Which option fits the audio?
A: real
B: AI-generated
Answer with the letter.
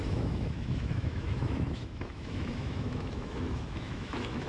B